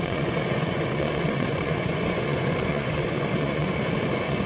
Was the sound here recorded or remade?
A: remade